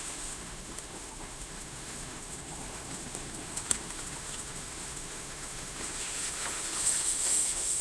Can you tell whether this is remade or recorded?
remade